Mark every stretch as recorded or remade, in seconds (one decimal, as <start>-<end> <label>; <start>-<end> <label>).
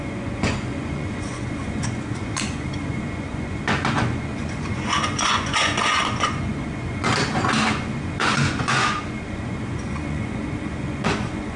0.0-7.1 remade; 7.1-7.6 recorded; 7.6-11.6 remade